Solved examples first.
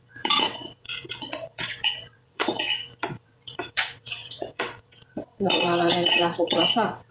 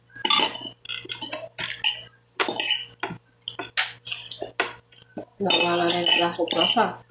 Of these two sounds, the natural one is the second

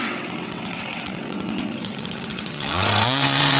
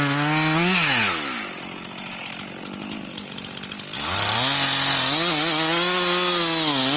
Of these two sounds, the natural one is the second